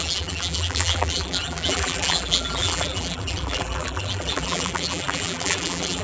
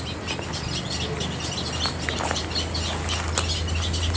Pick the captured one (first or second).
second